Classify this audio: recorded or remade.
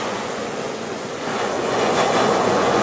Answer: remade